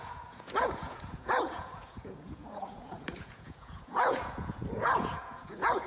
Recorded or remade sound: remade